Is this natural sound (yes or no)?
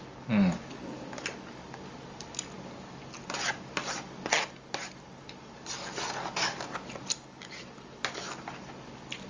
yes